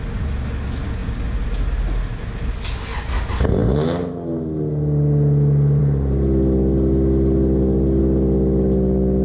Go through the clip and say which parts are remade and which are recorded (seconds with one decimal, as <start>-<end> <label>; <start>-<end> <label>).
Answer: 0.0-5.8 recorded; 5.8-8.0 remade; 8.0-9.2 recorded

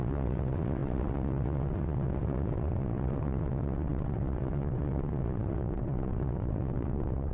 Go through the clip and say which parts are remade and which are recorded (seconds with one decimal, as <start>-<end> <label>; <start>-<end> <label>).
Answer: 0.0-7.3 remade

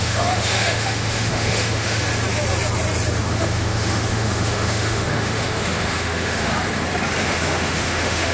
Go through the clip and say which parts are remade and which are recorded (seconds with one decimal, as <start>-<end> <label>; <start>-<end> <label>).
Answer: 0.0-2.0 remade; 2.0-3.2 recorded; 3.2-6.5 remade; 6.5-7.2 recorded; 7.2-8.3 remade

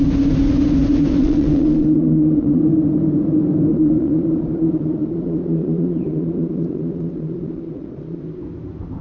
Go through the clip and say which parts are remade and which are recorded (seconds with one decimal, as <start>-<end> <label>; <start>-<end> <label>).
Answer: 0.0-1.2 recorded; 1.2-2.6 remade; 2.6-3.7 recorded; 3.7-8.2 remade; 8.2-9.0 recorded